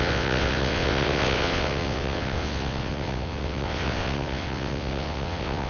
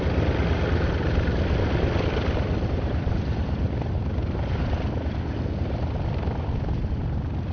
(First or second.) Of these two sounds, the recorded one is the second